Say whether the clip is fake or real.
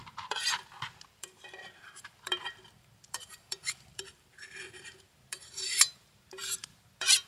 fake